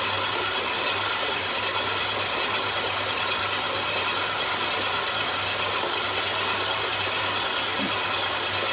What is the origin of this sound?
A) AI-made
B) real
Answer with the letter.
B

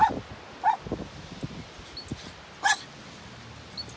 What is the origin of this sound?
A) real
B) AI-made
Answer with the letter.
A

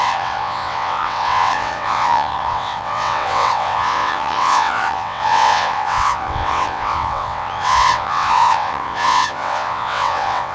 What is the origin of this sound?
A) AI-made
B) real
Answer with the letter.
A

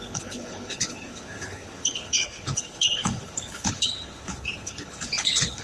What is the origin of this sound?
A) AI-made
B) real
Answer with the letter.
A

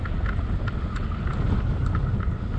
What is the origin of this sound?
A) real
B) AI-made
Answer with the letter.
A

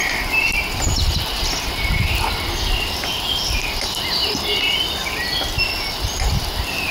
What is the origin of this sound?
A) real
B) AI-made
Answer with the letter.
A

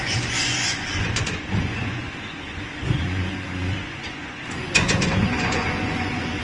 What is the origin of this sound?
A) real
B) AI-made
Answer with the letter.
B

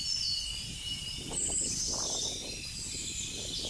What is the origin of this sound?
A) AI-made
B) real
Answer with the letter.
B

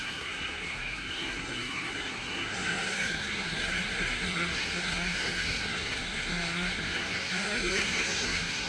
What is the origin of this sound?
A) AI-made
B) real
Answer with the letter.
A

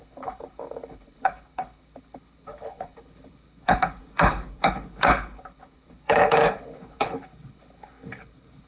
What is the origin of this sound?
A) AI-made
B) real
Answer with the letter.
A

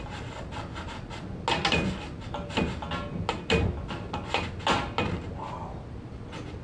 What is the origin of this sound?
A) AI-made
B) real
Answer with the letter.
B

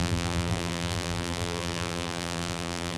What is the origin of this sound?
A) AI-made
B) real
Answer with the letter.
A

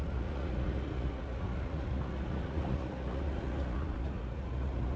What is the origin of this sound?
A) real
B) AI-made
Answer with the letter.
B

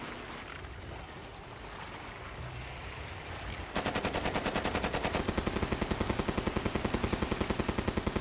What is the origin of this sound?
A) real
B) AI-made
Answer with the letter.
A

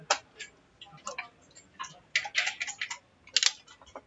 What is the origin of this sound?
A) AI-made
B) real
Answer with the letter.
B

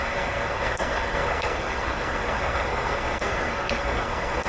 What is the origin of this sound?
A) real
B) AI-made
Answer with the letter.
B